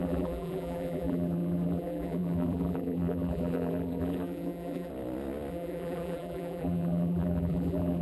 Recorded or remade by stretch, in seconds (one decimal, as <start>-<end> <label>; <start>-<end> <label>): 0.0-4.9 remade; 4.9-5.5 recorded; 5.5-8.0 remade